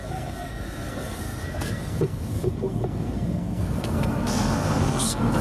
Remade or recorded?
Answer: remade